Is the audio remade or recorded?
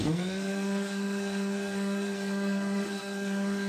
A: remade